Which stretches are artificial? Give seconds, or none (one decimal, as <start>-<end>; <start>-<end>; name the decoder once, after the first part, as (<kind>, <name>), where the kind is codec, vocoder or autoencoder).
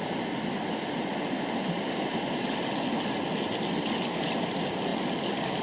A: none